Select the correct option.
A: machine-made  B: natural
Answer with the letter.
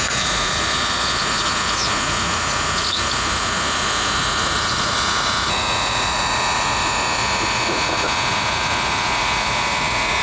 A